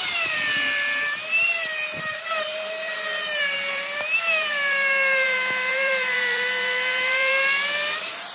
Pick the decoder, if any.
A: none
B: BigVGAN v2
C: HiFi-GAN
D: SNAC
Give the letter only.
B